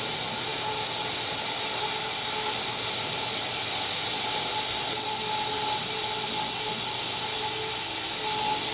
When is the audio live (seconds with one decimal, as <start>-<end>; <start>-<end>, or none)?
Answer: 0.0-8.7